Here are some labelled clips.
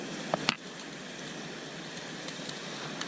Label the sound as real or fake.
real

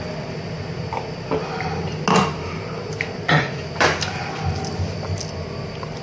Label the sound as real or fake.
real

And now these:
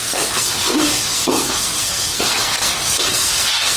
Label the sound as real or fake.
fake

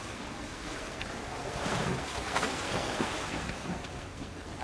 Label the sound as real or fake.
fake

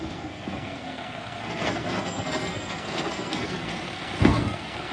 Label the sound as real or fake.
fake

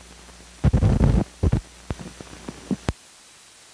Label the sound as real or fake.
real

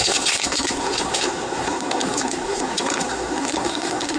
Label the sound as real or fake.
fake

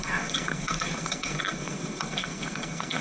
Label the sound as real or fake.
fake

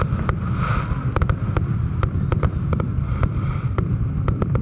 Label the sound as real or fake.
real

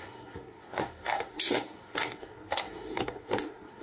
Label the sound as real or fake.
fake